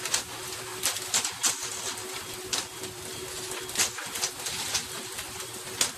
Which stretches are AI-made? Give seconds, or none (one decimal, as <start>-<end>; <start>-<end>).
none